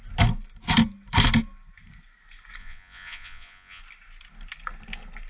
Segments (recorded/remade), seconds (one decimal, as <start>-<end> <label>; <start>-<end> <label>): 0.0-2.6 recorded; 2.6-3.8 remade; 3.8-5.3 recorded